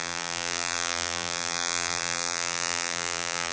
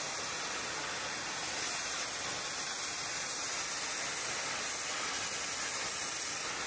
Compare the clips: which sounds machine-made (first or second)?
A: first